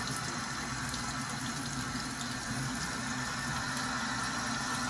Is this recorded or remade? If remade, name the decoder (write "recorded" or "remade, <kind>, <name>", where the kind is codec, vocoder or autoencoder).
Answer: recorded